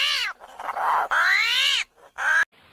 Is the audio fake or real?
real